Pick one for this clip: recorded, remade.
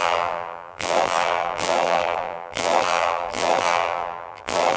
remade